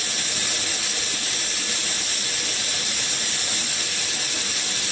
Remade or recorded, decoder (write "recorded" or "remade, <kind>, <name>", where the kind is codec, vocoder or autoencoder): recorded